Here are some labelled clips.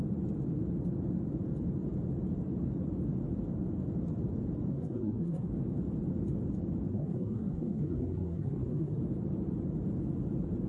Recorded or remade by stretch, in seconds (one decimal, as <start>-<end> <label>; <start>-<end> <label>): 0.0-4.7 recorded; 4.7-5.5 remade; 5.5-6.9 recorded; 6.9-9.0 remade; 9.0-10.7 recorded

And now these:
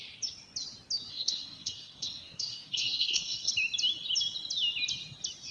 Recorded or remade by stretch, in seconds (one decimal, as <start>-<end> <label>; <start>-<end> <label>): 0.0-1.1 recorded; 1.1-3.5 remade; 3.5-5.5 recorded

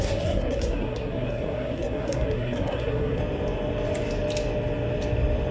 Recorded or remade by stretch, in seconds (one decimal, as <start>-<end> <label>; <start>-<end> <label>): 0.0-3.2 remade; 3.2-5.5 recorded

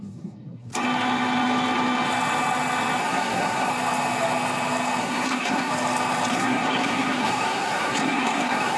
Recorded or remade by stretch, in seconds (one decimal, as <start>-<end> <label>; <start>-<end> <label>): 0.0-0.7 remade; 0.7-3.0 recorded; 3.0-3.7 remade; 3.7-5.0 recorded; 5.0-5.7 remade; 5.7-6.3 recorded; 6.3-8.8 remade

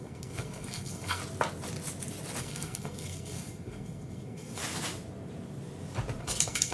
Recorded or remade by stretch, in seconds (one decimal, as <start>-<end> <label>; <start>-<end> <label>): 0.0-1.2 remade; 1.2-2.4 recorded; 2.4-4.6 remade; 4.6-6.2 recorded; 6.2-6.7 remade

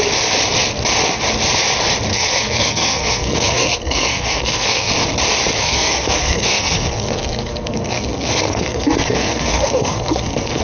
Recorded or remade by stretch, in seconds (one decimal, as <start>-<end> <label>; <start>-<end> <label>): 0.0-2.1 recorded; 2.1-4.9 remade; 4.9-5.6 recorded; 5.6-10.6 remade

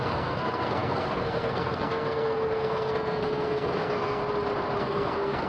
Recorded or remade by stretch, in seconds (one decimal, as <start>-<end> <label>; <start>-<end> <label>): 0.0-4.2 remade; 4.2-4.8 recorded; 4.8-5.5 remade